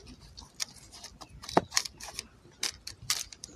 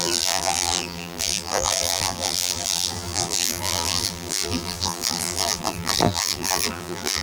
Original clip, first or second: first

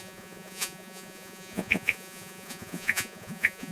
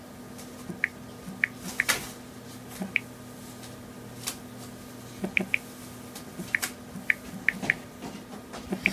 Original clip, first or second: second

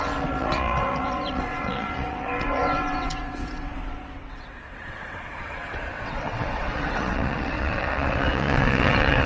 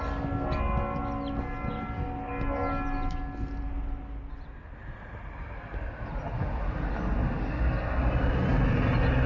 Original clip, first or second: second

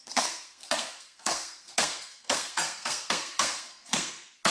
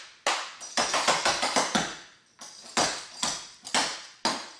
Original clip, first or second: second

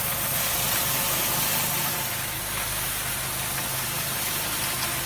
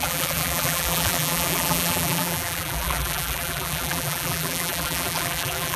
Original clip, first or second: first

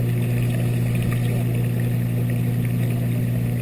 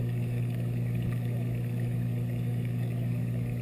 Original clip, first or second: first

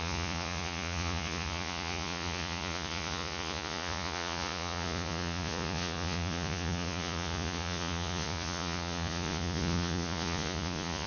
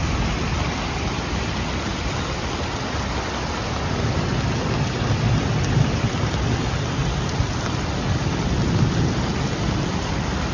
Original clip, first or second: second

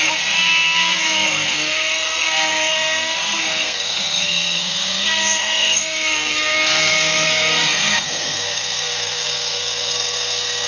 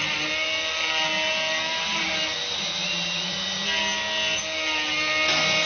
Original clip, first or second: second